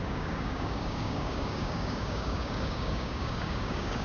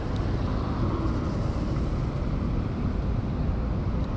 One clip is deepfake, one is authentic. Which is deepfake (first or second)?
first